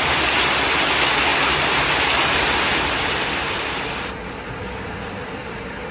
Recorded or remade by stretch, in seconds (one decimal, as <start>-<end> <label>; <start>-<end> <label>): 0.0-5.9 recorded